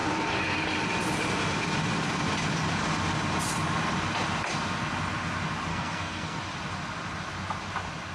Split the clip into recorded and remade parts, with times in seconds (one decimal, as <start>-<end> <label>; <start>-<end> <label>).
0.0-5.7 recorded; 5.7-6.4 remade; 6.4-8.1 recorded